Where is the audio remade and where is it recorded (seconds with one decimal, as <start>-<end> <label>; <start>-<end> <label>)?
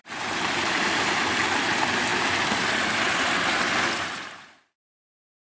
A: 0.0-1.2 remade; 1.2-5.5 recorded